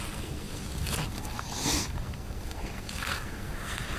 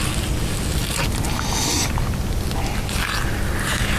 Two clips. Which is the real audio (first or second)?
second